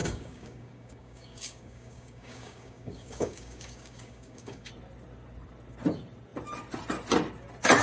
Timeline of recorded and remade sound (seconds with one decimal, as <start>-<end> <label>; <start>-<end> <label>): 0.0-4.7 remade; 4.7-7.8 recorded

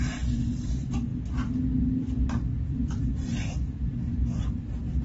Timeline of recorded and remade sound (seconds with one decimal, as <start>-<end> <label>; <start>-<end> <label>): 0.0-2.5 recorded; 2.5-4.4 remade; 4.4-5.0 recorded

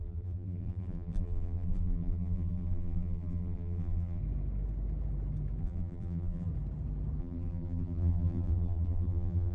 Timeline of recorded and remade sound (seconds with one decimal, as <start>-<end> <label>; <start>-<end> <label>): 0.0-4.2 remade; 4.2-5.6 recorded; 5.6-6.5 remade; 6.5-7.2 recorded; 7.2-9.5 remade

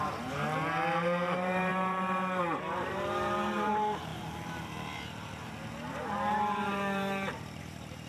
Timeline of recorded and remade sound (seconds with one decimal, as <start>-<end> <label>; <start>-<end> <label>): 0.0-8.1 remade

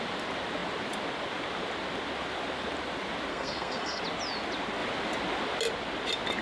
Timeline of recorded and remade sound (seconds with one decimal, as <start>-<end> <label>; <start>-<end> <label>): 0.0-3.3 recorded; 3.3-4.0 remade; 4.0-6.4 recorded

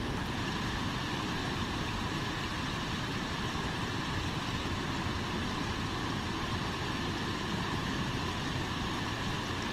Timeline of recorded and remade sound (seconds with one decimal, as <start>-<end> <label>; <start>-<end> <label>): 0.0-1.4 recorded; 1.4-4.1 remade; 4.1-6.5 recorded; 6.5-7.8 remade; 7.8-9.7 recorded

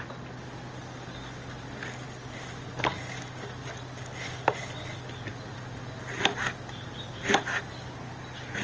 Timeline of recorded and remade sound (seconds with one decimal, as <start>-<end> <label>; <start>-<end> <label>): 0.0-8.6 recorded

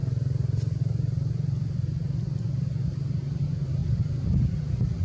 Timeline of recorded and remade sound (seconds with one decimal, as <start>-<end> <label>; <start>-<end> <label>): 0.0-0.8 recorded; 0.8-5.0 remade